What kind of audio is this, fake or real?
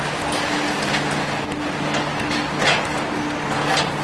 real